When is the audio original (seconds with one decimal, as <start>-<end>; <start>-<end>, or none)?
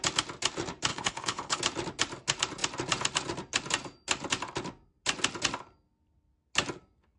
0.0-0.9; 1.6-7.2